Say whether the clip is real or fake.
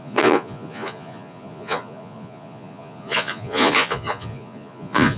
fake